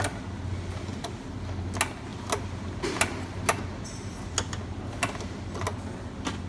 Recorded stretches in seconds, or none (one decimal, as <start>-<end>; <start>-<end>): 0.0-6.5